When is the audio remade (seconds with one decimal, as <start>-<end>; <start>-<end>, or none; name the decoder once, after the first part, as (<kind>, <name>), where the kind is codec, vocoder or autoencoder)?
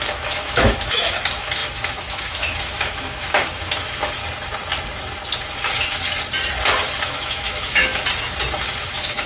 0.0-4.2 (autoencoder, DAC-VAE); 7.0-7.9; 8.8-9.3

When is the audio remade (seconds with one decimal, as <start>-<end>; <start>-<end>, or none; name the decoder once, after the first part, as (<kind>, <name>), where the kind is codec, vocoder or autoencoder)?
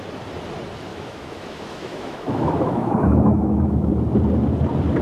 0.9-3.9 (autoencoder, DAC-VAE)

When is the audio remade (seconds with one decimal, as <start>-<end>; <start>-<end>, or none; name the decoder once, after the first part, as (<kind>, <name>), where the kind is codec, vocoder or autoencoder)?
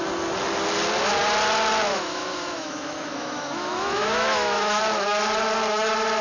1.9-4.8 (autoencoder, DAC-VAE)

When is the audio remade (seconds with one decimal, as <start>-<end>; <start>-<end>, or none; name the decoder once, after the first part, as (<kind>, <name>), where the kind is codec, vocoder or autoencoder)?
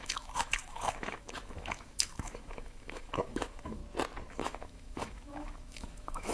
0.0-3.8 (autoencoder, DAC-VAE); 4.3-6.3